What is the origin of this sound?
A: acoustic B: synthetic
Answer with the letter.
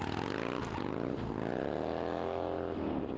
A